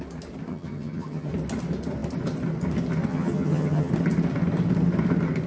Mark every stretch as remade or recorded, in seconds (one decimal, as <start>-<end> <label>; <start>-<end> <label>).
0.0-0.5 recorded; 0.5-1.3 remade; 1.3-3.1 recorded; 3.1-3.9 remade; 3.9-5.5 recorded